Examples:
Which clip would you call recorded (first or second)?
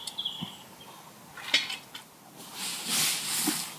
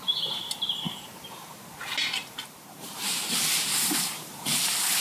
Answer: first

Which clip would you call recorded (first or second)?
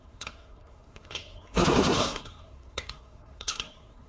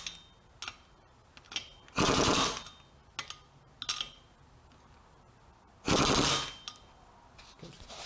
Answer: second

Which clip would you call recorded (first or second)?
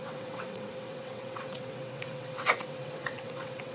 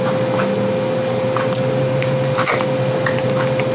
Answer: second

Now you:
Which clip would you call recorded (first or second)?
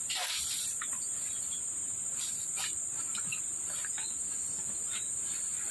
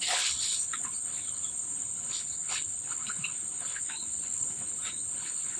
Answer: first